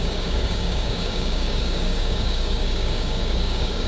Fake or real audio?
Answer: fake